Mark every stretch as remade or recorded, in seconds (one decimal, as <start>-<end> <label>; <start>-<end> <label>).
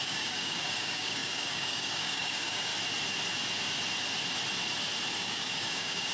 0.0-2.7 remade; 2.7-5.2 recorded; 5.2-6.1 remade